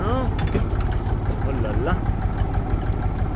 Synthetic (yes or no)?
no